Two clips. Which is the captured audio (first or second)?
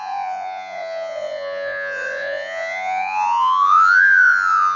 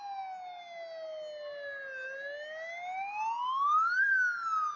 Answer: second